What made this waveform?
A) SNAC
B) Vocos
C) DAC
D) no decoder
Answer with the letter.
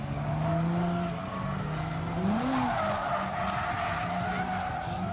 D